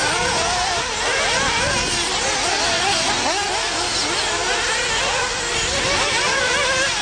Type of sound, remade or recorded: recorded